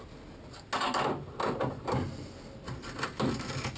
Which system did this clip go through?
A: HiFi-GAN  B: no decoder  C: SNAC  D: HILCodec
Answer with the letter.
B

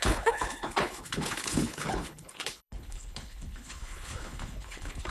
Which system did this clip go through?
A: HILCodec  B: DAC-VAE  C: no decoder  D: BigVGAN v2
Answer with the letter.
A